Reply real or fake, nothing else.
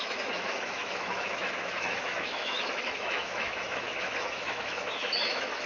fake